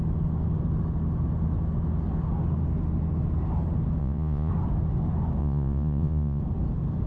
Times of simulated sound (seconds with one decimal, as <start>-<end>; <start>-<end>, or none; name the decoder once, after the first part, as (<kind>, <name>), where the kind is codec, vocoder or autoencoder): 4.0-4.5 (vocoder, Vocos); 5.4-6.4